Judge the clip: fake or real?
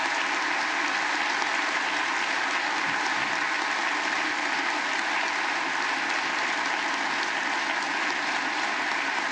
real